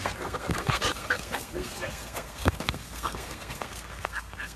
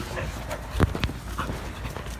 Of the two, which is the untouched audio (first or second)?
second